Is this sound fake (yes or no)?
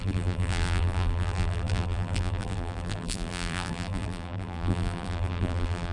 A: yes